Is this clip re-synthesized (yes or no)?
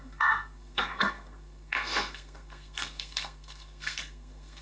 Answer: yes